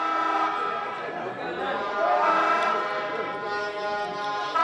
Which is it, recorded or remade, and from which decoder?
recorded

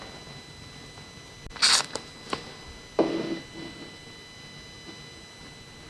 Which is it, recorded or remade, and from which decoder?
recorded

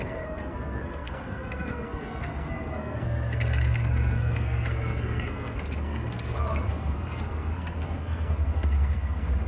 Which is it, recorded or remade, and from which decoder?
remade, codec, SNAC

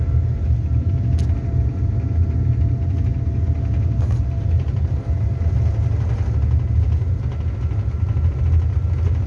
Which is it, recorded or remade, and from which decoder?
recorded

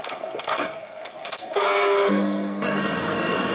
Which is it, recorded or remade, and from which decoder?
remade, codec, SNAC